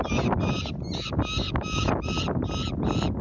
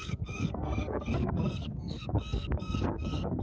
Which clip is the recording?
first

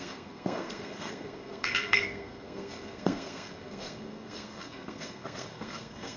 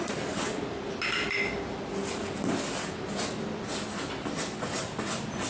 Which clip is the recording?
second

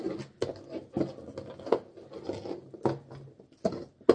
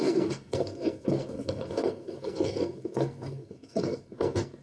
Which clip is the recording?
first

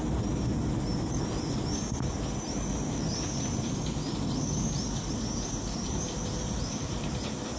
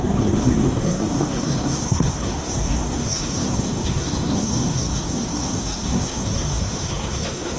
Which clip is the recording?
first